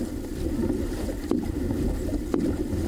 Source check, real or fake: real